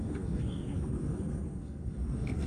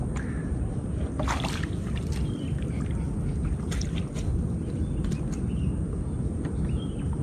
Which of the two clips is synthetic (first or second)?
first